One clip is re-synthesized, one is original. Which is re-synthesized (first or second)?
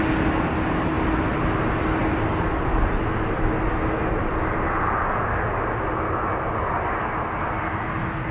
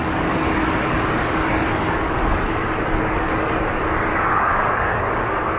second